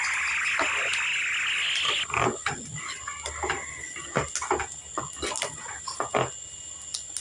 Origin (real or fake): real